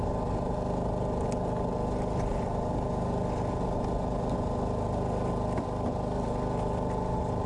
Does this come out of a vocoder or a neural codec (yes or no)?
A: no